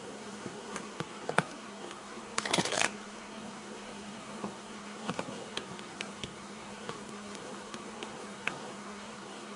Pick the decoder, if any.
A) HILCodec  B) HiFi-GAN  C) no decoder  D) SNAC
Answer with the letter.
D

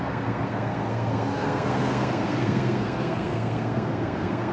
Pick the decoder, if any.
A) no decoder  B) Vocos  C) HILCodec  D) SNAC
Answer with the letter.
D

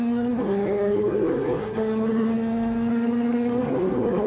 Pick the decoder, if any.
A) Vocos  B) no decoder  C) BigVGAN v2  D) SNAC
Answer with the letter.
D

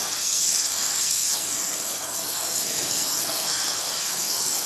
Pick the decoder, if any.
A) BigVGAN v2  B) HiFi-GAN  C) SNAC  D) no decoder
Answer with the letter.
C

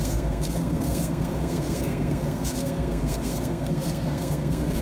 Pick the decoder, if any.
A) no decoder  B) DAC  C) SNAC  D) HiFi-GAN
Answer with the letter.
C